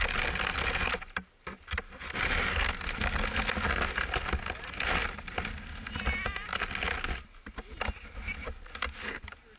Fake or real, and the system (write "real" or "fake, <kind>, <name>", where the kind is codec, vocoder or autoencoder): real